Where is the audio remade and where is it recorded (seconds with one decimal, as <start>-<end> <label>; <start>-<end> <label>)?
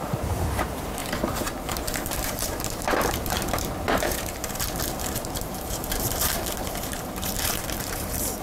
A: 0.0-1.0 remade; 1.0-2.1 recorded; 2.1-8.4 remade